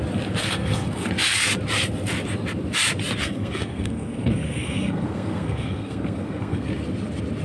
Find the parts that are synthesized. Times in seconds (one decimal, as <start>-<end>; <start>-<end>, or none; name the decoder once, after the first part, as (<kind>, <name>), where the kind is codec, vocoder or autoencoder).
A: 0.4-1.1 (codec, SNAC); 3.2-6.7